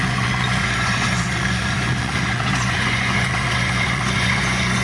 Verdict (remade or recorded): remade